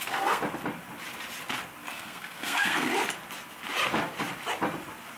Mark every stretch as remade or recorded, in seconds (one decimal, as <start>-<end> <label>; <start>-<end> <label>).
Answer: 0.0-0.4 remade; 0.4-1.9 recorded; 1.9-2.9 remade; 2.9-5.2 recorded